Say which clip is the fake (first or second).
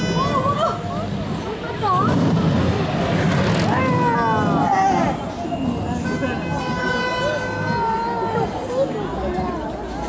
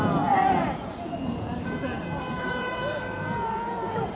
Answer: second